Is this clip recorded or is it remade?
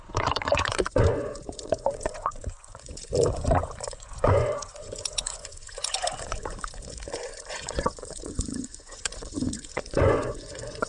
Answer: remade